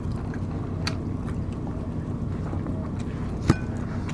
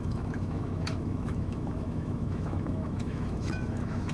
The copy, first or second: second